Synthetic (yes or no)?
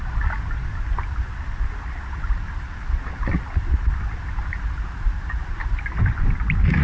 no